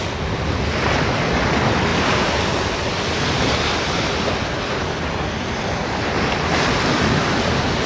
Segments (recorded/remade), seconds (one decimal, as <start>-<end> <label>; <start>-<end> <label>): 0.0-7.9 recorded